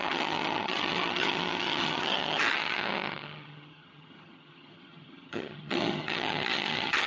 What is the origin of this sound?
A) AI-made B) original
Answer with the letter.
A